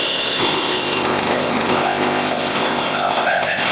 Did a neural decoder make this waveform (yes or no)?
yes